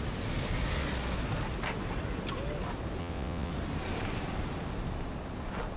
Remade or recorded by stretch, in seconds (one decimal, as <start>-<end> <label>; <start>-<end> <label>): 0.0-3.0 recorded; 3.0-3.5 remade; 3.5-5.8 recorded